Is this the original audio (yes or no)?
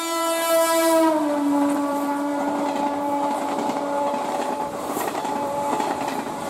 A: no